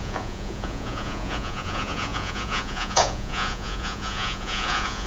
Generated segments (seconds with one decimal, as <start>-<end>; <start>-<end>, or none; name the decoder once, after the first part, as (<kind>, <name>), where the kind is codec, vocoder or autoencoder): 0.0-5.1 (vocoder, Vocos)